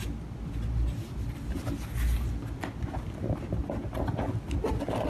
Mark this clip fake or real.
real